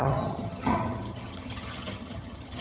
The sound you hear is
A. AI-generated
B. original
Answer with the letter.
A